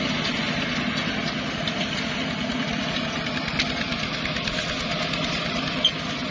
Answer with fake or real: real